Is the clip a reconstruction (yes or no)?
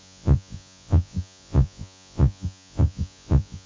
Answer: yes